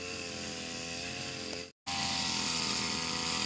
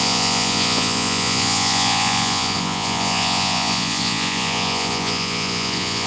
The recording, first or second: first